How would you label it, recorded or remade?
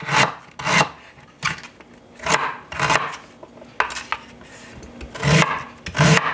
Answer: recorded